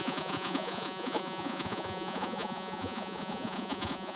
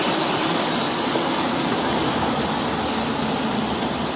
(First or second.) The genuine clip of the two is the second